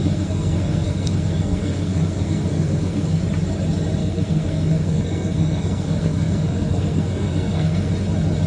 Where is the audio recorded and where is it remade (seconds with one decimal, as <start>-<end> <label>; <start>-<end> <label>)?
0.0-3.2 remade; 3.2-4.0 recorded; 4.0-7.9 remade; 7.9-8.5 recorded